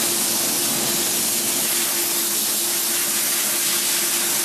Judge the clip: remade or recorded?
recorded